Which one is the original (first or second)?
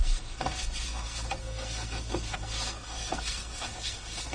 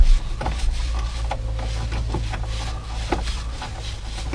second